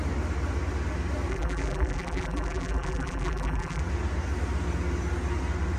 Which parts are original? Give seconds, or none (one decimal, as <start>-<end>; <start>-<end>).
0.0-1.3; 3.8-5.8